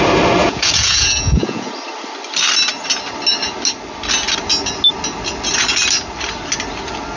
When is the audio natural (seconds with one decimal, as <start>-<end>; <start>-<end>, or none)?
0.0-0.4; 1.7-7.2